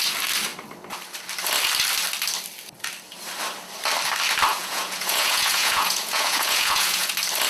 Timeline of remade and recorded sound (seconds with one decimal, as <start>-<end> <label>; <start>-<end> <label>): 0.0-4.5 recorded; 4.5-7.1 remade; 7.1-7.5 recorded